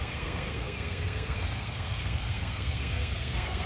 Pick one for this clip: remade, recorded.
remade